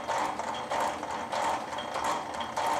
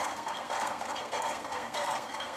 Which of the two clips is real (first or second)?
first